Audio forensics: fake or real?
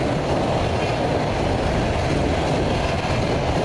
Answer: real